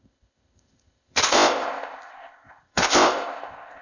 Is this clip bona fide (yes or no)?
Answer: no